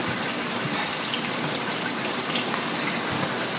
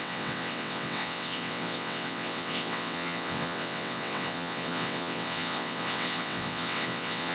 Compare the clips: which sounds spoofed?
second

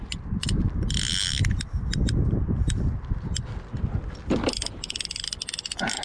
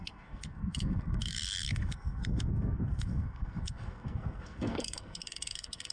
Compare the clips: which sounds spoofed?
second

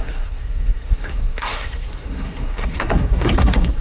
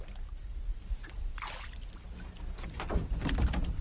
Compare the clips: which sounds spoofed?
first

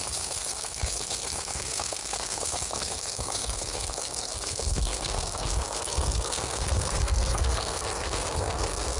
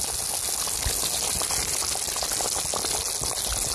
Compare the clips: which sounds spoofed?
first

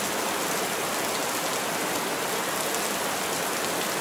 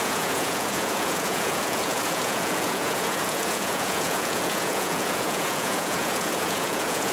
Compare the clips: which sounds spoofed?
second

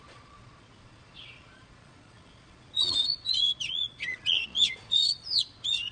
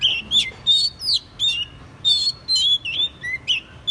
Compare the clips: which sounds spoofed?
first